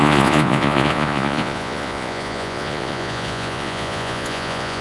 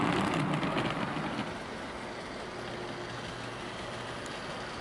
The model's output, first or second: first